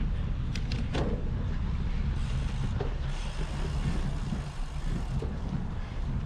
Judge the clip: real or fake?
real